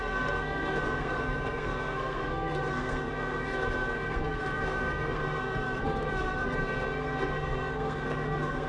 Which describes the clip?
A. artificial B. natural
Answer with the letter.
A